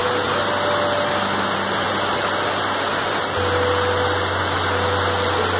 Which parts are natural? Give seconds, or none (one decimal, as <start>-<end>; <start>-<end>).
0.0-5.6